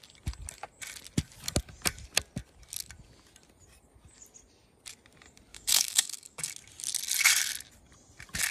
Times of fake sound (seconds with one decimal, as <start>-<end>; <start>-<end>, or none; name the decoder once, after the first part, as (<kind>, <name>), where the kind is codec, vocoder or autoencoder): 5.5-6.5 (codec, DAC)